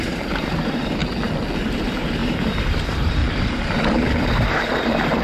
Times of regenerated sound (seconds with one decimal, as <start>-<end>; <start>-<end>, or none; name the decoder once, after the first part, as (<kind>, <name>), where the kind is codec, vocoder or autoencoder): 0.0-1.0 (vocoder, BigVGAN v2); 1.6-3.2; 4.2-5.2